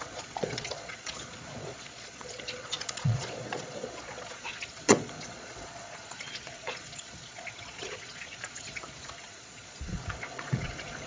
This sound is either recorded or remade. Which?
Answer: remade